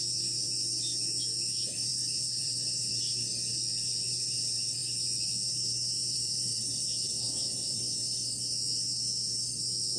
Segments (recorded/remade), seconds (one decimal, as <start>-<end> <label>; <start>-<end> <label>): 0.0-1.9 recorded; 1.9-2.9 remade; 2.9-6.0 recorded; 6.0-7.8 remade; 7.8-10.0 recorded